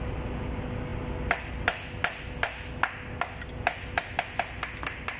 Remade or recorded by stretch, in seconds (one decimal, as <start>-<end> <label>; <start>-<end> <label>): 0.0-5.2 recorded